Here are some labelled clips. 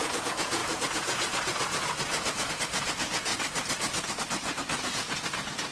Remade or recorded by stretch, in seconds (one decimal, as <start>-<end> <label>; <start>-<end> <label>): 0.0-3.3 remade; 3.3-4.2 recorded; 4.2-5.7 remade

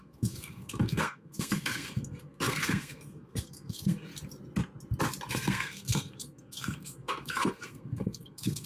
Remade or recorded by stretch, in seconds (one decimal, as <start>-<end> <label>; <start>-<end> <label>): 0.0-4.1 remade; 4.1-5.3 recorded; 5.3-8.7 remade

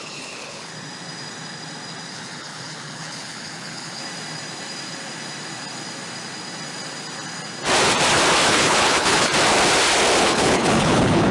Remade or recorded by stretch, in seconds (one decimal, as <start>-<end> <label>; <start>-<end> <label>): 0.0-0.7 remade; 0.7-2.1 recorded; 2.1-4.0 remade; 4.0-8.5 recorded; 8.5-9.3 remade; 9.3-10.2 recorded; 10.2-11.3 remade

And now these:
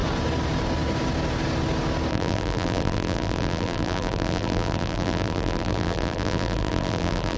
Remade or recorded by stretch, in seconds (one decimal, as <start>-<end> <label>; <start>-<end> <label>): 0.0-2.1 recorded; 2.1-7.4 remade

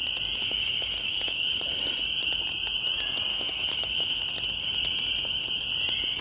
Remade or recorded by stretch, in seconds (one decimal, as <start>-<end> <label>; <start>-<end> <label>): 0.0-0.4 recorded; 0.4-1.6 remade; 1.6-3.3 recorded; 3.3-4.2 remade; 4.2-6.2 recorded

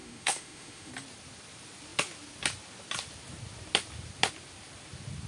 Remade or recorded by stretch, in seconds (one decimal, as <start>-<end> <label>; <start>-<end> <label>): 0.0-0.9 remade; 0.9-5.3 recorded

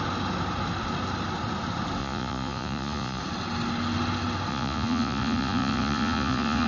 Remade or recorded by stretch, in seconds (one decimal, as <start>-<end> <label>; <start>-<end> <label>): 0.0-2.0 recorded; 2.0-3.2 remade; 3.2-4.5 recorded; 4.5-6.7 remade